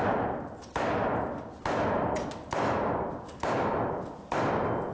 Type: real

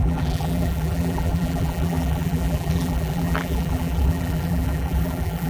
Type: fake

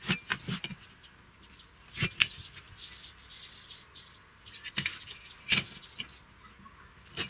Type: real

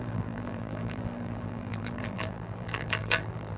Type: fake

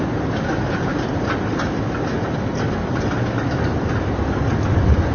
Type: real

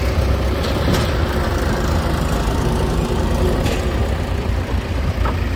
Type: fake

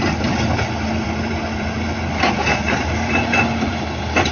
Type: fake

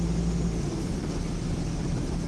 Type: real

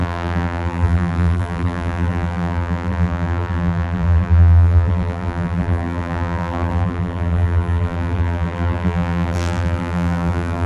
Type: fake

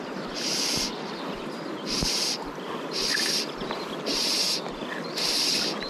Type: fake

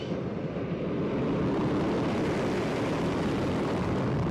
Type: fake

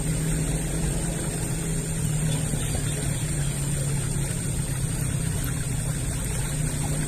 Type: real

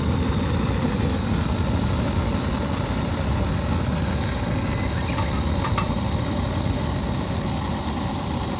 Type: real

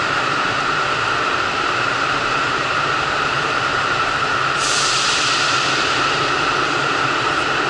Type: fake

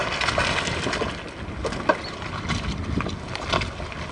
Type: real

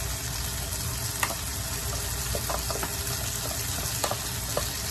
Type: real